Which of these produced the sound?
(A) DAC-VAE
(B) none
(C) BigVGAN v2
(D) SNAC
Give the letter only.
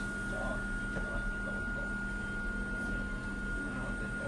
B